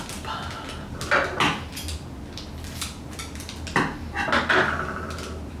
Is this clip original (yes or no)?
yes